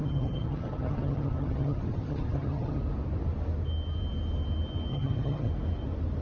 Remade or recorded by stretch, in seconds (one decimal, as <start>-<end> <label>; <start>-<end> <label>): 0.0-2.8 remade; 2.8-4.9 recorded; 4.9-5.5 remade; 5.5-6.2 recorded